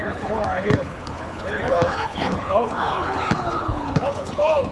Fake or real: fake